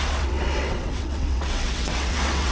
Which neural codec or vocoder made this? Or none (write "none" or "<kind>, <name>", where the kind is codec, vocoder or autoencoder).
vocoder, WaveNeXt